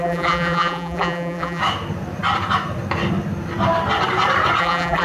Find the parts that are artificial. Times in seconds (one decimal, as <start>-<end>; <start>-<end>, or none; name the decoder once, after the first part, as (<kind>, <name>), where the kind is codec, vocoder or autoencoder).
0.0-1.6 (vocoder, BigVGAN v2); 4.6-5.0